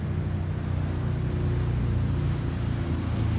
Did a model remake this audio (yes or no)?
no